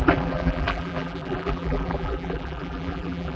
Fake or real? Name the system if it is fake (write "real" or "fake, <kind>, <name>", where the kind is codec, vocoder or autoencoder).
fake, vocoder, BigVGAN v2